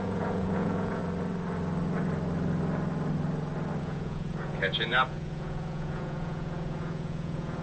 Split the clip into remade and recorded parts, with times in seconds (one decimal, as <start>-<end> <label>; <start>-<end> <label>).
0.0-1.0 remade; 1.0-3.8 recorded; 3.8-7.6 remade